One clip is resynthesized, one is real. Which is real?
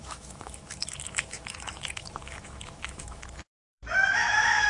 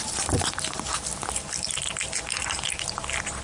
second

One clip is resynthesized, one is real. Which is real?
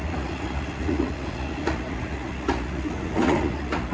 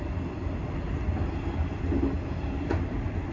second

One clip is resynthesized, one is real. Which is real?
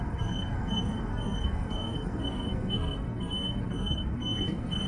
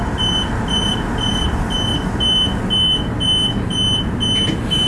second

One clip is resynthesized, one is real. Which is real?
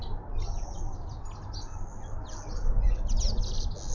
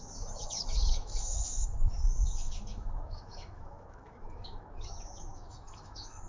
first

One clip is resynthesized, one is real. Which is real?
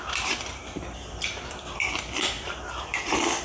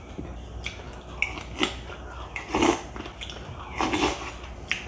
second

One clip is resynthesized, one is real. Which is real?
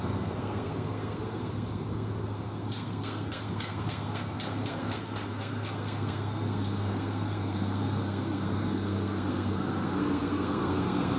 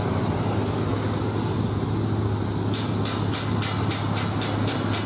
second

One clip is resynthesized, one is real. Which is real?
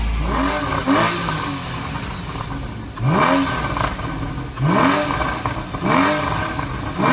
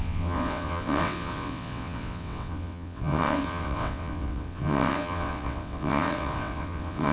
first